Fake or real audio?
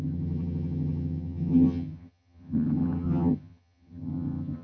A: fake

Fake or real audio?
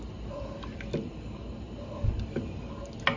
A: real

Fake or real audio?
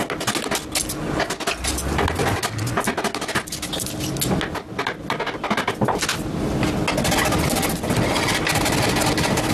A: real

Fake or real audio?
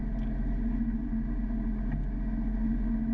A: real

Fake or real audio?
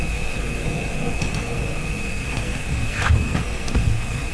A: fake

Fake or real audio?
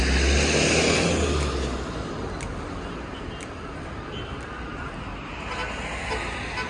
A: real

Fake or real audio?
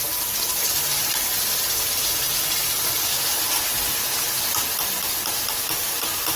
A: real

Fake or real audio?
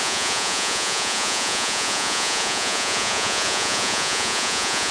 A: fake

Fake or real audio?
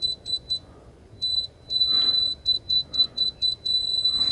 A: fake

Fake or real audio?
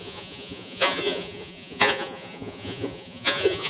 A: fake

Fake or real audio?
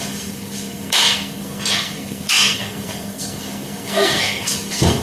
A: fake